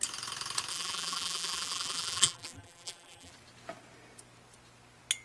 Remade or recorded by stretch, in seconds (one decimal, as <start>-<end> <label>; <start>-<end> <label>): 0.0-0.7 recorded; 0.7-3.3 remade; 3.3-5.2 recorded